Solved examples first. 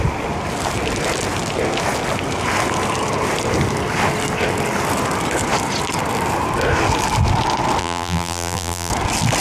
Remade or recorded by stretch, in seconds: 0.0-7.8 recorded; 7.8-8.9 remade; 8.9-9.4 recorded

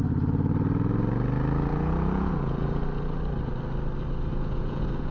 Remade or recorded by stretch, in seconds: 0.0-1.7 recorded; 1.7-2.8 remade; 2.8-4.3 recorded; 4.3-5.1 remade

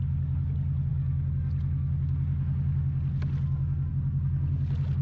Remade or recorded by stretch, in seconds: 0.0-5.0 recorded

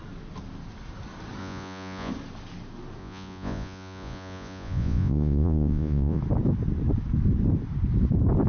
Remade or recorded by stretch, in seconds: 0.0-1.4 recorded; 1.4-2.1 remade; 2.1-3.0 recorded; 3.0-6.2 remade; 6.2-8.5 recorded

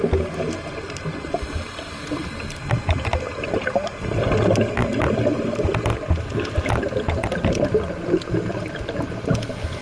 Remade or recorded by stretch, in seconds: 0.0-9.8 recorded

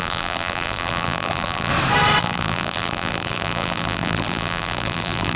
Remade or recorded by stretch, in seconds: 0.0-1.7 remade; 1.7-2.2 recorded; 2.2-5.4 remade

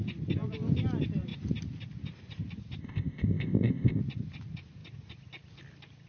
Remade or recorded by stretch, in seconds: 0.0-2.8 recorded; 2.8-4.0 remade; 4.0-6.1 recorded